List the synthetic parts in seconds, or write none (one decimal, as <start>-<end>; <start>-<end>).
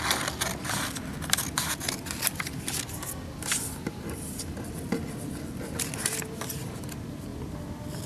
none